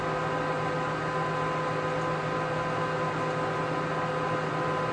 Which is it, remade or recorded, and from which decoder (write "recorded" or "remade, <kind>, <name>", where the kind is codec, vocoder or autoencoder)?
recorded